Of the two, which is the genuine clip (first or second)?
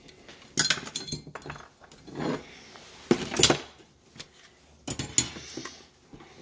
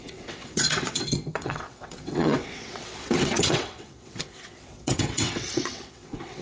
first